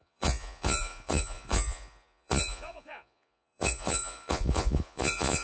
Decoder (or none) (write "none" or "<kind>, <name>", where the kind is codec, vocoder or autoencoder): vocoder, Vocos